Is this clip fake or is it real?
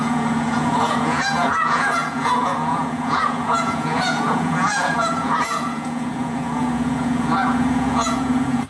fake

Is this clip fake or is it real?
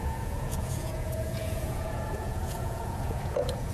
fake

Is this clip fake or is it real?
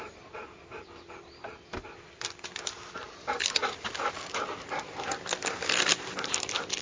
real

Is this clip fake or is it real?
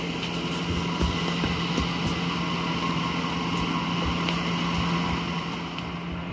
real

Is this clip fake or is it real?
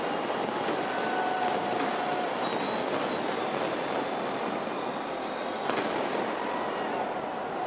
real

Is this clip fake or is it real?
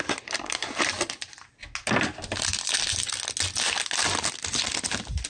real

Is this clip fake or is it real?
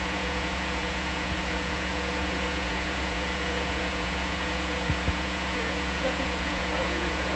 fake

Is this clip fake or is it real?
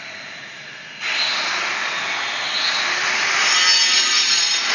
real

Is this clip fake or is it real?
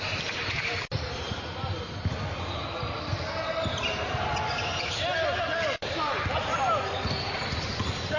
real